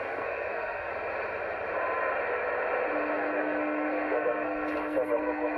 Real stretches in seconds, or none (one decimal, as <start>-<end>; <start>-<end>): 0.9-3.1